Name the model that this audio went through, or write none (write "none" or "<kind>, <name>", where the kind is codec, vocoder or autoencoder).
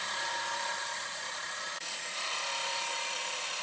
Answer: vocoder, BigVGAN v2